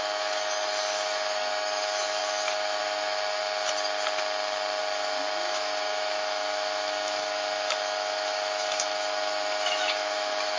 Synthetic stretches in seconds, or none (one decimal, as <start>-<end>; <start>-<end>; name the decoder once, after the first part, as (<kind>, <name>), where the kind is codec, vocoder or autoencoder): 0.0-3.4 (autoencoder, DAC-VAE); 4.8-10.6

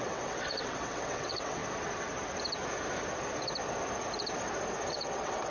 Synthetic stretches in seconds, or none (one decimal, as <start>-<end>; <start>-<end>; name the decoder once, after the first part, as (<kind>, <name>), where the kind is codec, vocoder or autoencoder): 0.0-1.6 (vocoder, WaveNeXt); 4.9-5.5

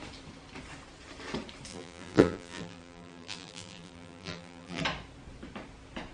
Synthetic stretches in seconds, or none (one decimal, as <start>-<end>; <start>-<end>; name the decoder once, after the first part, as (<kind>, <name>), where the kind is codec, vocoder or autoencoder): 1.7-4.8 (vocoder, BigVGAN v2)

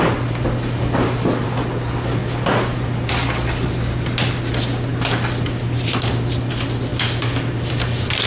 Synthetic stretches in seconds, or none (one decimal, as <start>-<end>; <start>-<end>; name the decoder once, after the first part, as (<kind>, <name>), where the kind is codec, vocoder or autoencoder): none

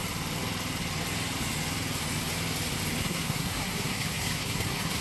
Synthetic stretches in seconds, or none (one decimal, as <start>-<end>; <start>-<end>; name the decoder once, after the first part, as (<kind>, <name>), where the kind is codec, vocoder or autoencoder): 3.0-5.0 (codec, SNAC)

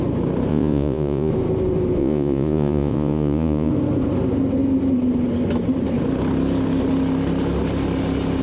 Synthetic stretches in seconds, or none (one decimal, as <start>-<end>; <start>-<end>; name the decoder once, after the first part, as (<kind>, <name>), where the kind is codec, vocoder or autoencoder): 0.5-1.3 (vocoder, Vocos); 2.0-3.7

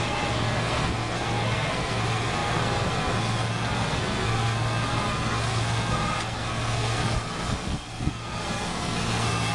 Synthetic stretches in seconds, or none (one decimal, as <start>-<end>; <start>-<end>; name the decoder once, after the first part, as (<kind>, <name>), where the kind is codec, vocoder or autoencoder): 0.0-9.5 (codec, SNAC)